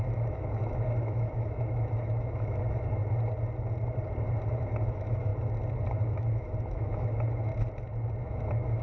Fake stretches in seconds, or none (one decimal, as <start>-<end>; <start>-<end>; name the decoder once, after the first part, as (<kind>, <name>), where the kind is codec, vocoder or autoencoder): 0.0-3.0 (autoencoder, DAC-VAE); 4.5-5.3; 5.9-7.5; 8.2-8.8